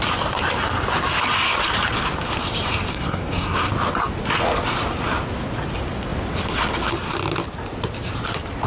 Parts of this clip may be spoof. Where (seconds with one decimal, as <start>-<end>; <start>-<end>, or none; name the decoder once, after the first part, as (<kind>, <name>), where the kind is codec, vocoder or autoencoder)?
2.9-3.7 (codec, SNAC)